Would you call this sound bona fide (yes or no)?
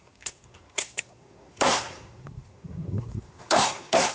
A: no